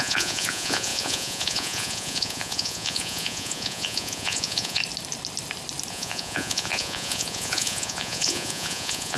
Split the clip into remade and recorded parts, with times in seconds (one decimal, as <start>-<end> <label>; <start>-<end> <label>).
0.0-4.8 remade; 4.8-5.9 recorded; 5.9-9.2 remade